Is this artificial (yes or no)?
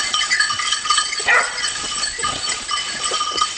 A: yes